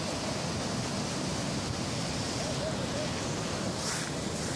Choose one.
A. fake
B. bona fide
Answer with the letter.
B